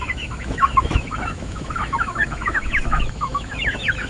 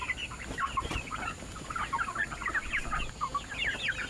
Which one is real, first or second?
second